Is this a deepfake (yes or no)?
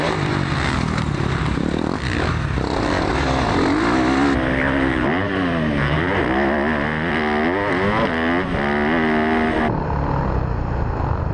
no